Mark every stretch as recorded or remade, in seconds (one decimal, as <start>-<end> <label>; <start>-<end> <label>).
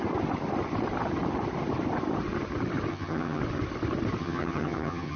0.0-2.9 recorded; 2.9-3.4 remade; 3.4-4.2 recorded; 4.2-5.2 remade